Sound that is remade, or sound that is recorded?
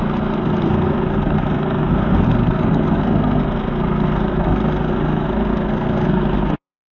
remade